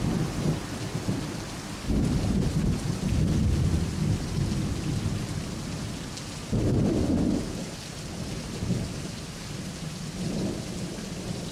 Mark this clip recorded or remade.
recorded